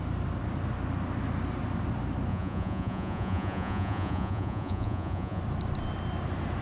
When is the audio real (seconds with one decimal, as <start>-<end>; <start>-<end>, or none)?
0.0-2.3; 5.4-6.6